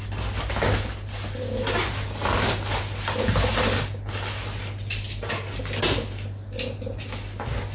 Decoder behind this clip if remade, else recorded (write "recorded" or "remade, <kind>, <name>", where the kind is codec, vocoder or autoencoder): recorded